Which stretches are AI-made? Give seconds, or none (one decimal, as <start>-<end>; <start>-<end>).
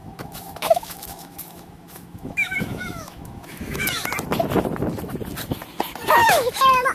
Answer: 0.0-4.1; 6.2-6.9